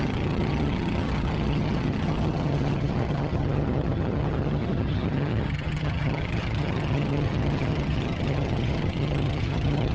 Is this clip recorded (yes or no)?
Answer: no